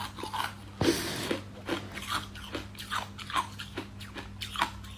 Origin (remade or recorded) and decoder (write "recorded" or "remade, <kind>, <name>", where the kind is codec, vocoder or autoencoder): recorded